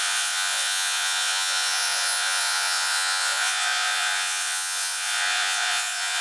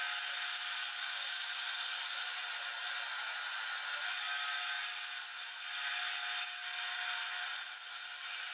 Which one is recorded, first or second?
second